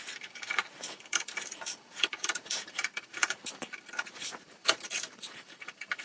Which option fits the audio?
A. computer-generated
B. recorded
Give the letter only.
A